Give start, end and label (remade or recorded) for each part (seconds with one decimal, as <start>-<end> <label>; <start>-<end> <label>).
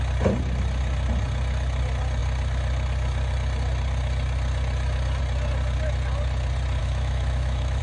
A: 0.0-6.8 recorded; 6.8-7.8 remade